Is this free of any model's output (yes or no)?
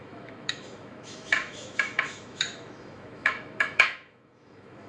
no